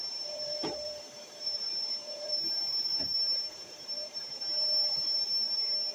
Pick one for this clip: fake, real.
fake